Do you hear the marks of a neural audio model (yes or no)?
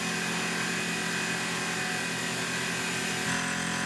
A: no